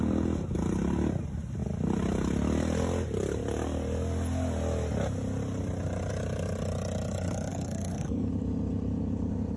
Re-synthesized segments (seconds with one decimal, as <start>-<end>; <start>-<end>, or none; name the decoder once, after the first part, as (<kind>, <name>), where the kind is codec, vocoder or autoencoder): 7.5-8.3 (codec, SNAC)